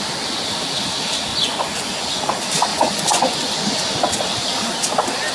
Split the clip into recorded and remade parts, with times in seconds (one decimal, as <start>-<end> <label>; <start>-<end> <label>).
0.0-1.3 recorded; 1.3-2.2 remade; 2.2-2.7 recorded; 2.7-3.7 remade; 3.7-5.3 recorded